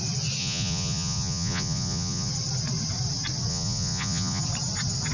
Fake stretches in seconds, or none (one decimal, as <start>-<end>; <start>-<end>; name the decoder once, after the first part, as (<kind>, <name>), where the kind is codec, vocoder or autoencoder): 0.4-2.3 (vocoder, Vocos); 3.5-4.4